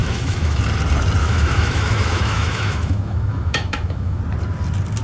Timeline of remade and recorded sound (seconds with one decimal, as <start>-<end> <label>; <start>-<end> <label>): 0.0-0.6 remade; 0.6-1.2 recorded; 1.2-4.2 remade; 4.2-5.0 recorded